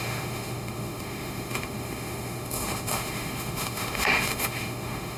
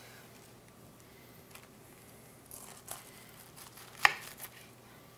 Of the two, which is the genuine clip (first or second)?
second